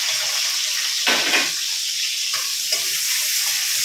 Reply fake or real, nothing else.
real